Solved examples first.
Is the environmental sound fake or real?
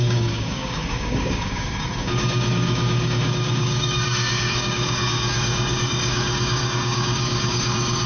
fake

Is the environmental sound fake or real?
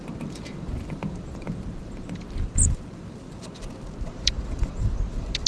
fake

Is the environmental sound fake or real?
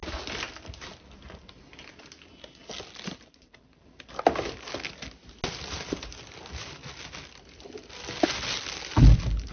real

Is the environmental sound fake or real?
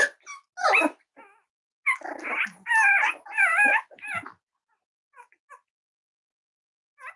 real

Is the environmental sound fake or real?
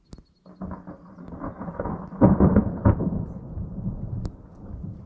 real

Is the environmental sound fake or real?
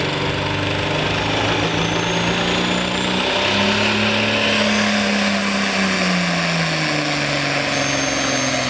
real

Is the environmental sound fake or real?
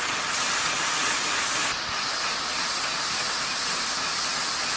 real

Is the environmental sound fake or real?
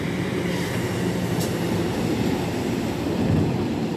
real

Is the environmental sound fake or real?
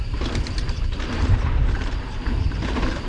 fake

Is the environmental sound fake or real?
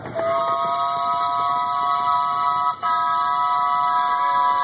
real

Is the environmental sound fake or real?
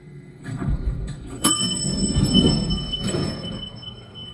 fake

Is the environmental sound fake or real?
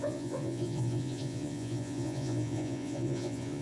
fake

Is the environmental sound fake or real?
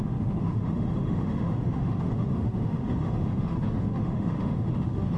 fake